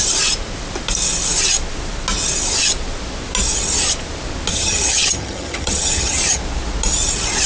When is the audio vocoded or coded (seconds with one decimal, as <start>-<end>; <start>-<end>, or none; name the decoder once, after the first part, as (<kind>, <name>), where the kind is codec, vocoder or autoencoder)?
4.5-6.4 (vocoder, HiFi-GAN)